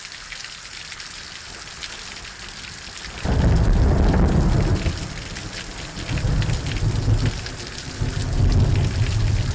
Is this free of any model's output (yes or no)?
yes